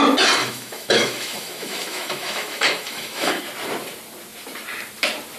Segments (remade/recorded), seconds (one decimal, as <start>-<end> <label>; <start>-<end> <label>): 0.0-0.4 recorded; 0.4-3.4 remade; 3.4-5.4 recorded